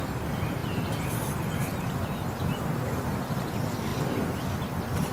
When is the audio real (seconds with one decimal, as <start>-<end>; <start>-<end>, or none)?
0.0-3.9; 4.5-5.1